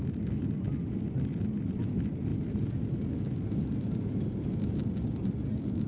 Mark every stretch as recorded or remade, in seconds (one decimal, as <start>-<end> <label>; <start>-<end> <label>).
0.0-5.9 recorded